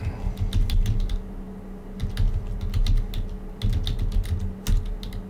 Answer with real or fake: real